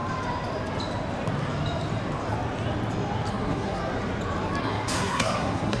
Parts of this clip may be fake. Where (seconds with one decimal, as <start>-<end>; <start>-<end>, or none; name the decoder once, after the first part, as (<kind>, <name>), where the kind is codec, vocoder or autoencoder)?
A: 3.3-3.8 (codec, SNAC); 4.6-5.8

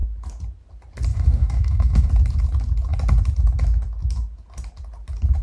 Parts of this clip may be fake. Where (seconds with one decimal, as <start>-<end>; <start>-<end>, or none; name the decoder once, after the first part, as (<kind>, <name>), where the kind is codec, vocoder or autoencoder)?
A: 1.1-2.1 (codec, DAC)

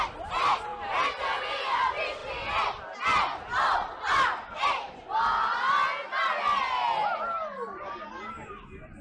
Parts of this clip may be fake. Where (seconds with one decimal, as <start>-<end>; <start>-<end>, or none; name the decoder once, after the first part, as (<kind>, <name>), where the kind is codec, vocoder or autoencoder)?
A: none

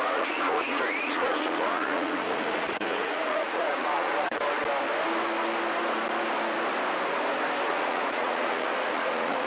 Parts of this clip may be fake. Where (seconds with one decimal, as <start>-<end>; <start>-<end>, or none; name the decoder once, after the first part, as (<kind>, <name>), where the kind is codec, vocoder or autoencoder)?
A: 0.0-4.6 (vocoder, Vocos); 7.7-9.5

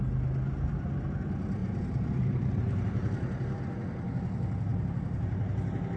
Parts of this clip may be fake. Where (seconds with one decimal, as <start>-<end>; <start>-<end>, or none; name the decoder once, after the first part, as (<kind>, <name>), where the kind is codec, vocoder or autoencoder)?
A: 1.6-3.6 (vocoder, BigVGAN v2)

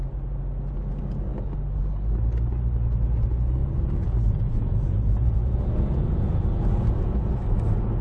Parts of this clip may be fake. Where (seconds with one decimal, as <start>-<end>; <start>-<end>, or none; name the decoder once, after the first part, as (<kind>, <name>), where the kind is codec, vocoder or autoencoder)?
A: 3.6-7.1 (vocoder, Vocos)

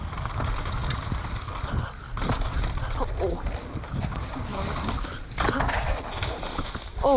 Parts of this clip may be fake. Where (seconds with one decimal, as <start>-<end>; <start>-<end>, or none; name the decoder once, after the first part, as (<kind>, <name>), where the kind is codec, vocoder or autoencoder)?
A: 0.8-2.0 (vocoder, BigVGAN v2); 4.5-6.1